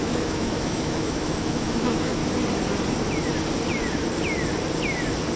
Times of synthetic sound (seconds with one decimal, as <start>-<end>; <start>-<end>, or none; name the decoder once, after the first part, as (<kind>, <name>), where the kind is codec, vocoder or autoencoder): 0.0-2.2 (autoencoder, DAC-VAE)